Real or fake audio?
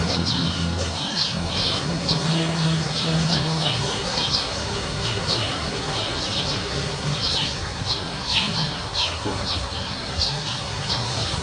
fake